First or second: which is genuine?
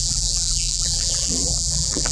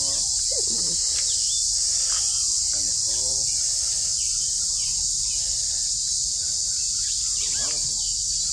second